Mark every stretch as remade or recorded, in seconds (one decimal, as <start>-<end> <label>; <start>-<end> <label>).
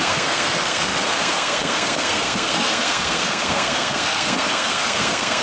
0.0-5.4 remade